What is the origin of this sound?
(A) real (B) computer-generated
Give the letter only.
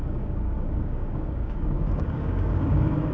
B